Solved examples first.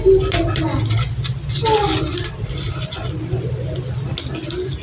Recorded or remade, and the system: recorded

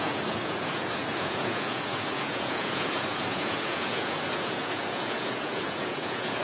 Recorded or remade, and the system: remade, vocoder, Vocos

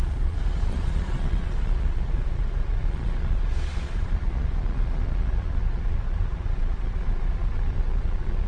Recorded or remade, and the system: remade, vocoder, Vocos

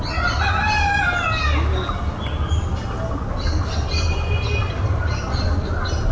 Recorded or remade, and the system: recorded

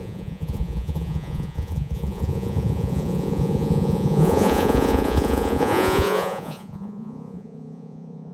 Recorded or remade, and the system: remade, vocoder, Vocos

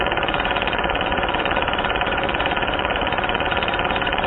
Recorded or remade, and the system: remade, vocoder, Vocos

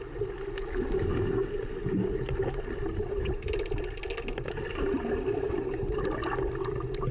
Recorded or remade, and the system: recorded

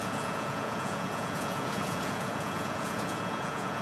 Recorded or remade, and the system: remade, vocoder, Vocos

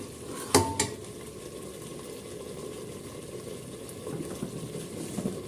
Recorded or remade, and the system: recorded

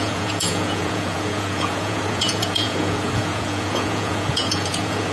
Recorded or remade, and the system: remade, vocoder, Vocos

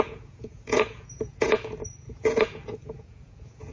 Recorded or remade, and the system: remade, vocoder, Vocos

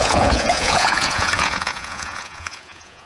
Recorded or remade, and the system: remade, vocoder, Vocos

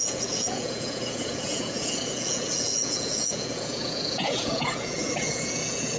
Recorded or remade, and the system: remade, vocoder, Vocos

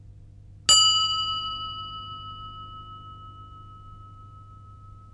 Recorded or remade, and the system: recorded